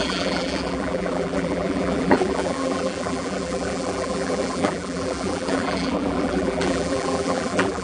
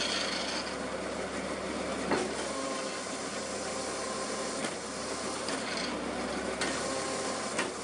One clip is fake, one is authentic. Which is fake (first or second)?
first